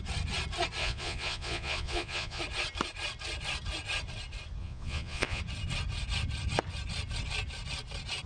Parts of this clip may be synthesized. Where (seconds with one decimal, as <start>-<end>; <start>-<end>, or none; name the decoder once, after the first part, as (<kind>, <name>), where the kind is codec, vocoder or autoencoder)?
0.8-2.4 (vocoder, Vocos); 4.6-5.4